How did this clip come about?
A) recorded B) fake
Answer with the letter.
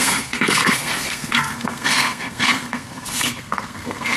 B